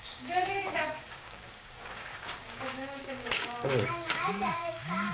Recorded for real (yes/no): no